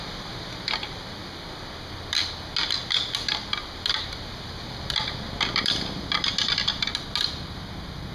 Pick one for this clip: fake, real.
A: real